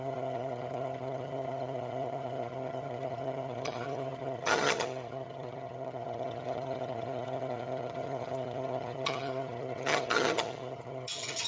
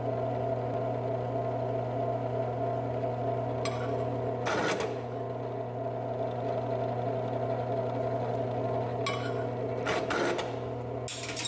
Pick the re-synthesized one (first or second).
first